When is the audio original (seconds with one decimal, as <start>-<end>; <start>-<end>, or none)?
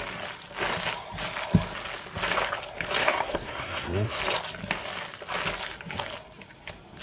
0.0-3.0; 4.2-7.0